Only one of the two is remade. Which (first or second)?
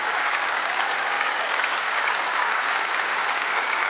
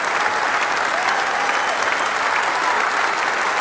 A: first